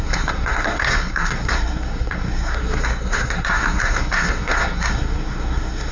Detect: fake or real fake